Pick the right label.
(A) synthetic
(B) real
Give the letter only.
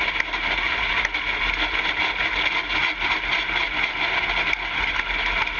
B